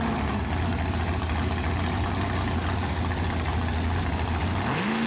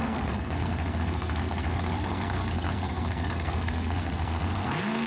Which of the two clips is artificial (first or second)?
second